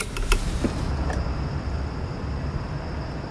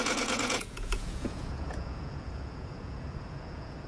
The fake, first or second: second